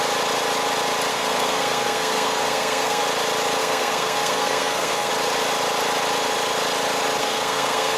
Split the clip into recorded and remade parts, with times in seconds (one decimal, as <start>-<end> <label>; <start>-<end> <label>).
0.0-1.1 recorded; 1.1-3.0 remade; 3.0-3.6 recorded; 3.6-5.1 remade; 5.1-7.2 recorded; 7.2-8.0 remade